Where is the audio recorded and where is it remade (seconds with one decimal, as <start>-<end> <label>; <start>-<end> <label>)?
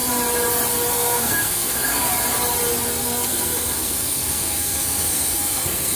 0.0-0.9 recorded; 0.9-2.1 remade; 2.1-2.9 recorded; 2.9-6.0 remade